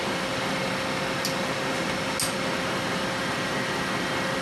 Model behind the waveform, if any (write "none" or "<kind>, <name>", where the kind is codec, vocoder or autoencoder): none